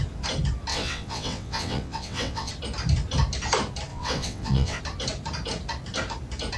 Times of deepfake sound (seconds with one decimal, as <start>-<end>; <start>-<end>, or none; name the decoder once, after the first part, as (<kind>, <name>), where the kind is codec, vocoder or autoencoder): 0.7-2.5 (vocoder, WaveNeXt); 3.9-4.8